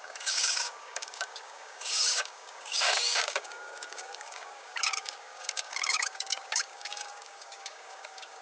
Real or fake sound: fake